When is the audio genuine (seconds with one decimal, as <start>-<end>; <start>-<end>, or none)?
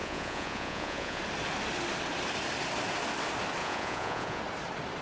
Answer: 1.2-3.6; 4.4-5.0